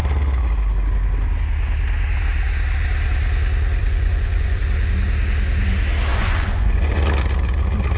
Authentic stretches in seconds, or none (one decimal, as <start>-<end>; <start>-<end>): 0.0-3.8; 4.6-6.1; 7.0-8.0